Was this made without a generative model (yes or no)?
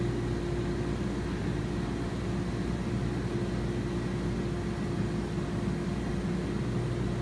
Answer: yes